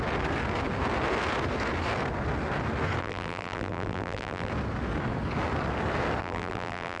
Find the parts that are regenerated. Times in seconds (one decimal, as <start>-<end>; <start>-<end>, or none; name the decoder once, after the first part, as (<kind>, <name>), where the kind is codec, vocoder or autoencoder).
3.0-4.5 (vocoder, BigVGAN v2); 6.2-7.0